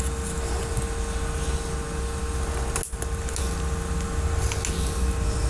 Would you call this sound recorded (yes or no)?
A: yes